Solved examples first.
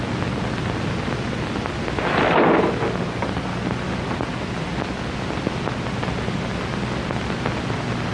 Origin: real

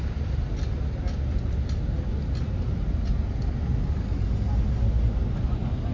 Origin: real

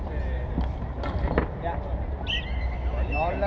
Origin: real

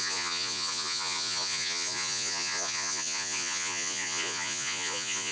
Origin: fake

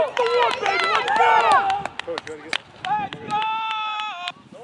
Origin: real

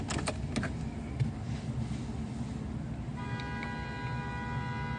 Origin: real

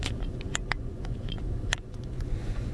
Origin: fake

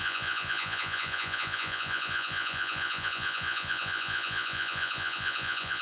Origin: fake